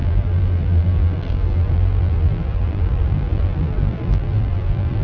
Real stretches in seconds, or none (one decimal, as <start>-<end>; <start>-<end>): none